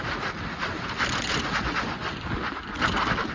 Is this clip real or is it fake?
real